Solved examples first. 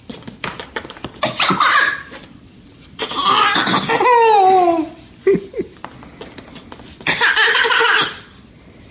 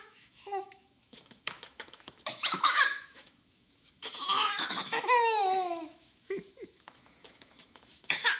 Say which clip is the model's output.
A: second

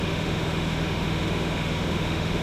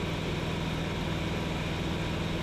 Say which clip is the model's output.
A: first